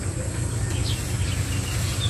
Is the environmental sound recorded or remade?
recorded